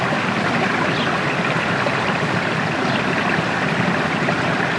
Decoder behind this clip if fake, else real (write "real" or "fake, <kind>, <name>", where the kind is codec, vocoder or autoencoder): real